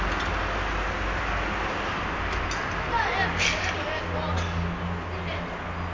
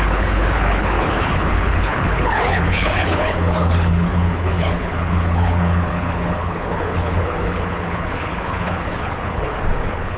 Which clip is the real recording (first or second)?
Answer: first